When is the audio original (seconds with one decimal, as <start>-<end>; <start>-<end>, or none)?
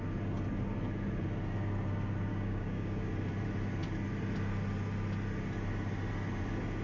0.0-2.3; 3.1-6.8